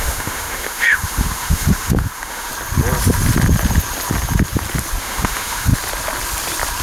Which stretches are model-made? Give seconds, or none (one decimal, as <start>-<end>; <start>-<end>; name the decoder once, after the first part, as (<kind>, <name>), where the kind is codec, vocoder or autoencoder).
0.0-2.5 (autoencoder, DAC-VAE); 5.0-5.7